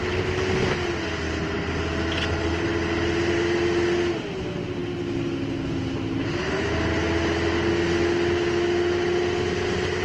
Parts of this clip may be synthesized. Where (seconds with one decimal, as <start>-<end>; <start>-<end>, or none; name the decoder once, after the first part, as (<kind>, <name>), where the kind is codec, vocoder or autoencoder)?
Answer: none